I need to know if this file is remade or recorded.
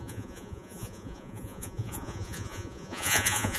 remade